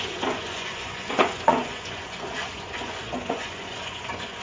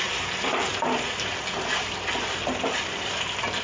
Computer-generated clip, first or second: first